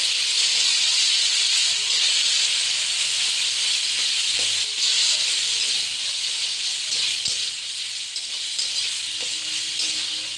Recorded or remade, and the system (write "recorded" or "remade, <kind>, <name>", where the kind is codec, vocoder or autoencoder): recorded